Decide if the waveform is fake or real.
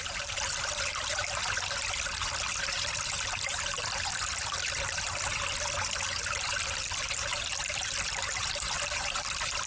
real